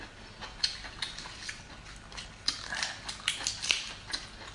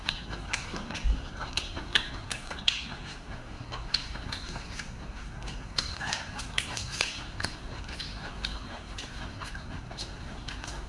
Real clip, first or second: first